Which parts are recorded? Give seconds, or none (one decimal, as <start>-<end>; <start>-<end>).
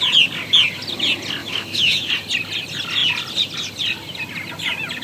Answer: 0.0-1.4; 2.1-5.0